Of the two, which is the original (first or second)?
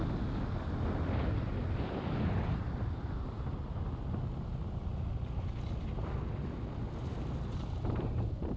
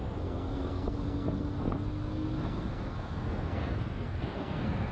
first